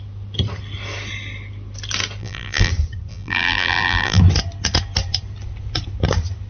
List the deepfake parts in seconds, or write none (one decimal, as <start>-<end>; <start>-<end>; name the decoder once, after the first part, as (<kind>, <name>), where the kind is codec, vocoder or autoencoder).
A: 2.2-2.7 (vocoder, BigVGAN v2); 3.1-4.2